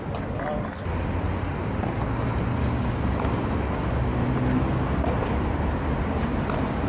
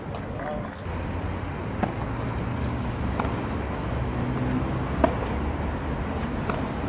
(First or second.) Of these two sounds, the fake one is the first